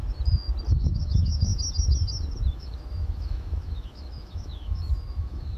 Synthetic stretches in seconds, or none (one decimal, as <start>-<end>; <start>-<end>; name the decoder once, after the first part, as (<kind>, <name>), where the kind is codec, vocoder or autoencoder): 0.7-1.5 (autoencoder, DAC-VAE); 2.5-5.6